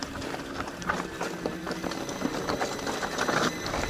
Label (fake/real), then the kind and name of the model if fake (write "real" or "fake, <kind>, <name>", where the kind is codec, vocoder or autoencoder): real